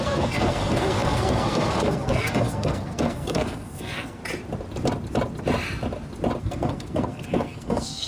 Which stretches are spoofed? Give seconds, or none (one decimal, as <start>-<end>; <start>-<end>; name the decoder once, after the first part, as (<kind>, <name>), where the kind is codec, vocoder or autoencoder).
0.0-4.2 (codec, SNAC); 6.4-8.1